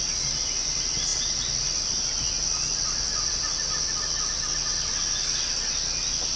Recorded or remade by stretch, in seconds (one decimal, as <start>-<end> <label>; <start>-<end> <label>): 0.0-6.4 recorded